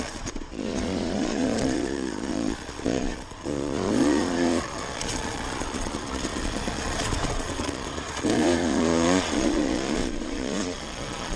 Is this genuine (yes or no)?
no